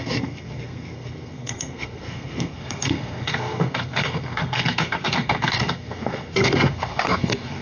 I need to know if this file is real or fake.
fake